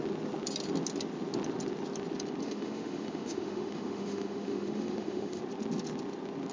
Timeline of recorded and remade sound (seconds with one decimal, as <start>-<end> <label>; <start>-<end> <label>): 0.0-2.4 recorded; 2.4-5.4 remade; 5.4-6.5 recorded